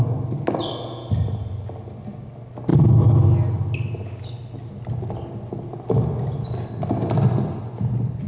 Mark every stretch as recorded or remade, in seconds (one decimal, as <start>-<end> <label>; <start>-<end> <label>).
0.0-8.3 recorded